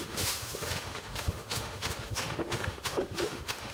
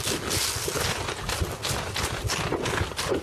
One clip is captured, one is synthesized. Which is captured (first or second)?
second